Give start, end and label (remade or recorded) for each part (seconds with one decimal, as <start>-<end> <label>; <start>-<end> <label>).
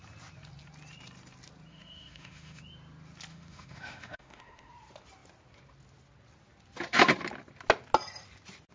0.0-1.7 recorded; 1.7-2.6 remade; 2.6-3.3 recorded; 3.3-4.7 remade; 4.7-8.7 recorded